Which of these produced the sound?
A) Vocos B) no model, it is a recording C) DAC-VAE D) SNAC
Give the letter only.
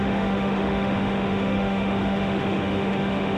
C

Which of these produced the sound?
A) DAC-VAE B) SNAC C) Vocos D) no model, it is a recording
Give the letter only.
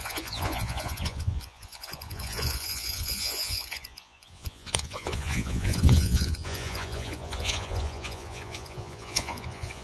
C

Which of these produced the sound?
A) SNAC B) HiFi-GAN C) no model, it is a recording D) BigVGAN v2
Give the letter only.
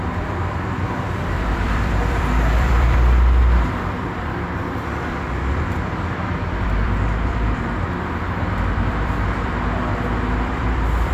D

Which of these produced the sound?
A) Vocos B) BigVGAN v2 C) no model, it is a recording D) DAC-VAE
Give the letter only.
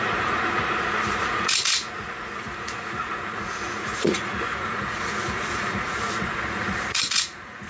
A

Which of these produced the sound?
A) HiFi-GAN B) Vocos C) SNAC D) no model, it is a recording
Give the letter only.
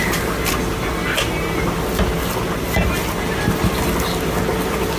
D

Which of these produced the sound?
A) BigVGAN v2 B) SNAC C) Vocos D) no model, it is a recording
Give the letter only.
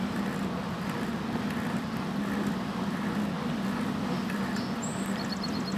D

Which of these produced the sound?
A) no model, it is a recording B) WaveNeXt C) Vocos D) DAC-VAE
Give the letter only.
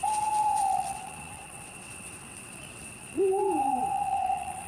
B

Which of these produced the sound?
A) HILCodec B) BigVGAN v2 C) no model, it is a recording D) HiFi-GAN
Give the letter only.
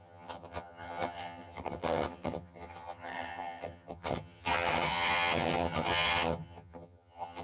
D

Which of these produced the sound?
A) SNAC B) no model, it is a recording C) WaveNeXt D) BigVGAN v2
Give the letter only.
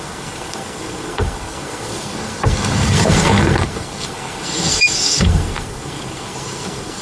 A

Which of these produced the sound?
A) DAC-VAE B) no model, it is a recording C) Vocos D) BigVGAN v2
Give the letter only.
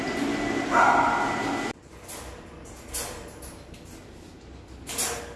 B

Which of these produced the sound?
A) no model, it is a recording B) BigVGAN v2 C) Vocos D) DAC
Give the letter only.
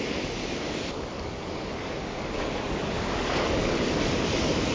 D